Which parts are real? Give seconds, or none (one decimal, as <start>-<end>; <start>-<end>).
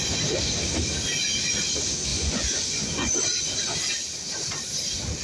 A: 0.0-2.1; 3.1-5.2